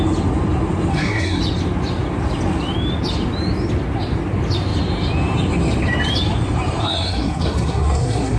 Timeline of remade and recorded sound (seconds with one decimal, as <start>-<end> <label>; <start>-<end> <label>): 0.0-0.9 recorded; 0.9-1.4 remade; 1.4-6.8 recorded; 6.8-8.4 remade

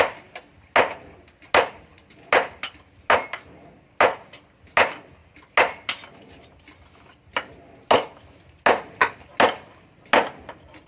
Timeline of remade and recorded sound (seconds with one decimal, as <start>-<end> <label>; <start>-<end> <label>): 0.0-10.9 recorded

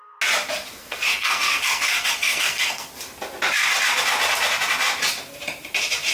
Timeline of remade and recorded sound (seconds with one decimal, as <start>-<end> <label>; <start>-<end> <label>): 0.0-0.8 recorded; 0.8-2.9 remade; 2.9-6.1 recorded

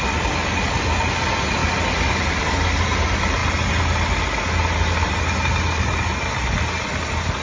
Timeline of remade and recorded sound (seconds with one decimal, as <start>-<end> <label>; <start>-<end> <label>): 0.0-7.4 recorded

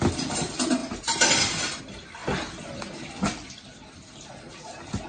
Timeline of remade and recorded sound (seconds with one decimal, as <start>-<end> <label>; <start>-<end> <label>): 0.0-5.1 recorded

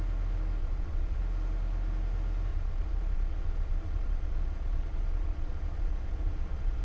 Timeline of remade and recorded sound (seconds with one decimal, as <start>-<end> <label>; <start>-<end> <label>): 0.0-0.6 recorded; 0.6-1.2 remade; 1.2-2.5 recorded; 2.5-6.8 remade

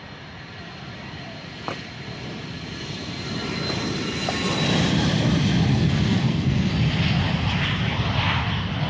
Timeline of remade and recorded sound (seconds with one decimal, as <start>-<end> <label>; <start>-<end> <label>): 0.0-5.7 recorded; 5.7-6.7 remade; 6.7-8.9 recorded

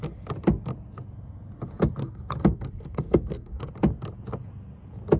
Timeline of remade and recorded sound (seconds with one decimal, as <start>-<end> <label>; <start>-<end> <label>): 0.0-2.0 recorded; 2.0-3.7 remade; 3.7-5.2 recorded